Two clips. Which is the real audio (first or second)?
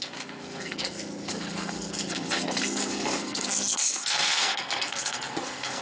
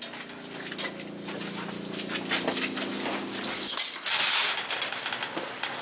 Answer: second